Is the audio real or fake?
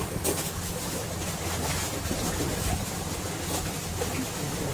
real